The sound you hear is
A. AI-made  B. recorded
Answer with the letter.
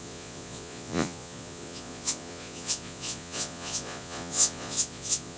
A